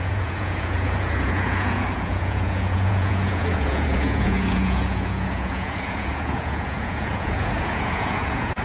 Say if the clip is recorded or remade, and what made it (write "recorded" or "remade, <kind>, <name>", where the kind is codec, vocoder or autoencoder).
remade, vocoder, Vocos